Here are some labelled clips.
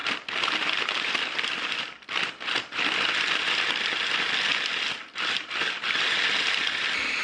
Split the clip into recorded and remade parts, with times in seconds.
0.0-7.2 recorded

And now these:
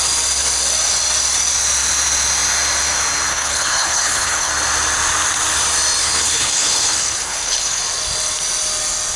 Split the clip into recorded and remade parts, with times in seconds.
0.0-3.3 recorded; 3.3-4.5 remade; 4.5-6.0 recorded; 6.0-7.8 remade; 7.8-9.2 recorded

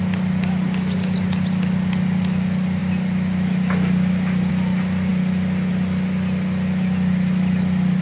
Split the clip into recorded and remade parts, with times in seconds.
0.0-8.0 recorded

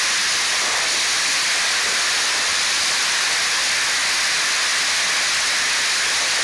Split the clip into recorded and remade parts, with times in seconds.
0.0-2.5 recorded; 2.5-3.3 remade; 3.3-6.4 recorded

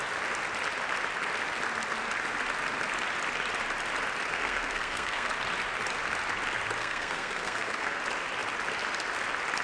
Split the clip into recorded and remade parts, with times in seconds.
0.0-4.3 recorded; 4.3-5.3 remade; 5.3-6.8 recorded; 6.8-8.0 remade; 8.0-9.6 recorded

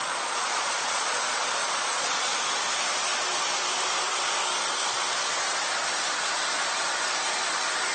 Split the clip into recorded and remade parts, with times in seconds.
0.0-1.2 remade; 1.2-1.6 recorded; 1.6-2.4 remade; 2.4-7.9 recorded

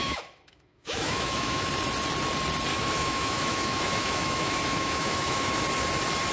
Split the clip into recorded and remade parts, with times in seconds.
0.0-1.7 remade; 1.7-2.7 recorded; 2.7-5.6 remade; 5.6-6.3 recorded

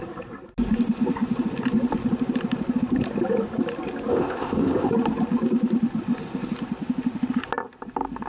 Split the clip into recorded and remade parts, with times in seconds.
0.0-4.1 recorded; 4.1-4.9 remade; 4.9-8.3 recorded